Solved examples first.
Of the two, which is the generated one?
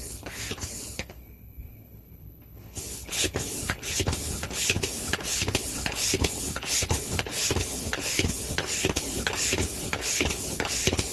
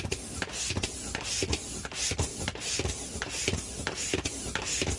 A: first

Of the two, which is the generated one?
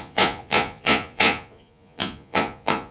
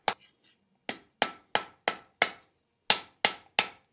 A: first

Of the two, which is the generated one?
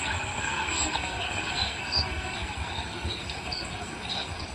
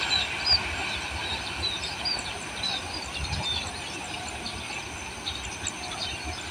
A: first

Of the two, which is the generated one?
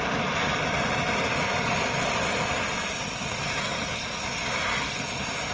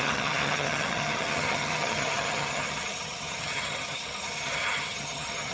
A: second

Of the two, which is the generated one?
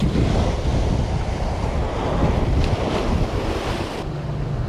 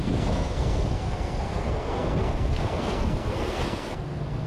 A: second